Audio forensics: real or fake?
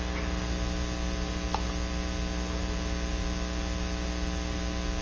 real